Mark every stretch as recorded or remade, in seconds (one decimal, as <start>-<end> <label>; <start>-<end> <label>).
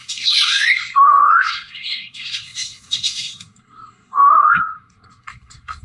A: 0.0-5.8 remade